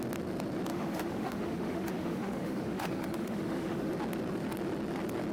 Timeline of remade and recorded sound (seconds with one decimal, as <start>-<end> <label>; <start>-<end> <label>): 0.0-0.7 recorded; 0.7-3.9 remade; 3.9-5.3 recorded